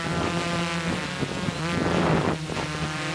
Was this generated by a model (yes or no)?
yes